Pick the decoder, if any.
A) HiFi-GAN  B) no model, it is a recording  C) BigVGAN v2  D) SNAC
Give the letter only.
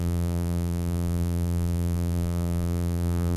C